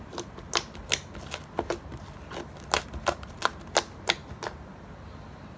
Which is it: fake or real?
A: real